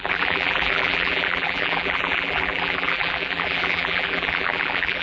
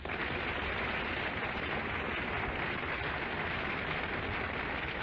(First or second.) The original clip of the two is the second